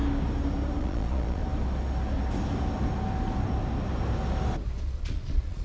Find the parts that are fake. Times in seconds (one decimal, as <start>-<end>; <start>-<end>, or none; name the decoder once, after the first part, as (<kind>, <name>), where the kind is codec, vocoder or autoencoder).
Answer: 0.8-1.4 (vocoder, Vocos); 4.8-5.6